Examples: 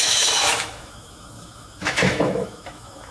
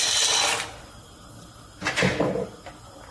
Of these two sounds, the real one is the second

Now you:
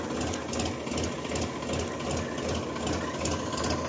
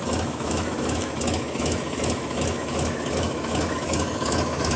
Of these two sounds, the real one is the first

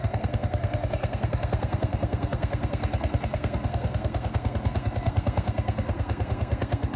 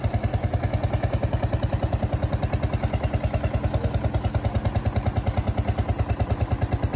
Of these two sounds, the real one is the second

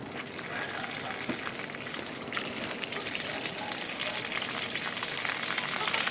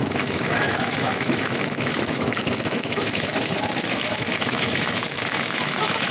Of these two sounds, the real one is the first